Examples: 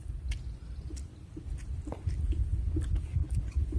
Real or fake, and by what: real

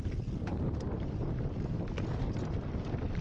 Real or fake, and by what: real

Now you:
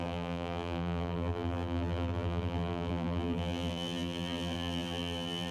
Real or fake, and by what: fake, vocoder, BigVGAN v2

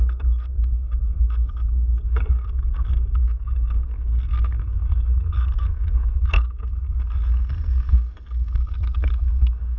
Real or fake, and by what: fake, codec, SNAC